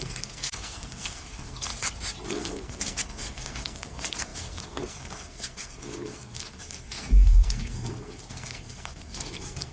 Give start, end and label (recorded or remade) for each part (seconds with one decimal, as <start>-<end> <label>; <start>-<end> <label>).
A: 0.0-1.7 remade; 1.7-2.3 recorded; 2.3-9.7 remade